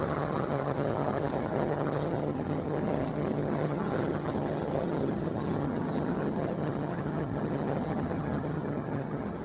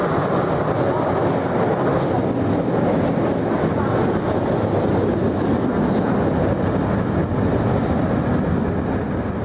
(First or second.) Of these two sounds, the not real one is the first